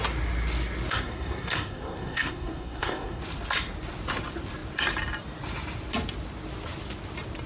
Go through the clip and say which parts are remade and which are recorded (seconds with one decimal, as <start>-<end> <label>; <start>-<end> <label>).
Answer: 0.0-0.9 recorded; 0.9-3.2 remade; 3.2-7.5 recorded